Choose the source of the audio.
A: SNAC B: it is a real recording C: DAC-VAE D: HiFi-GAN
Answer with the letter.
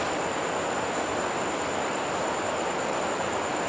B